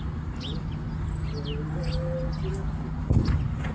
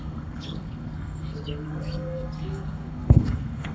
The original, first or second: first